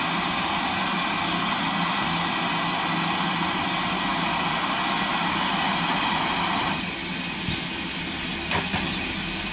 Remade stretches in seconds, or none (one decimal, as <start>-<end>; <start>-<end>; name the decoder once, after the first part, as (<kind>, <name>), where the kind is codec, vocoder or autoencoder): 4.1-6.8 (vocoder, BigVGAN v2)